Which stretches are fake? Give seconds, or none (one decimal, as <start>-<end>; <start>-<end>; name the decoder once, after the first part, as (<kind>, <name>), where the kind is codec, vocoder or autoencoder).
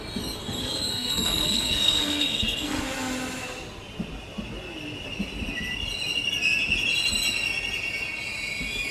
0.6-2.8 (codec, SNAC)